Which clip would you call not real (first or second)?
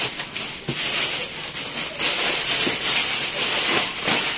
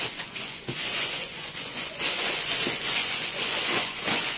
second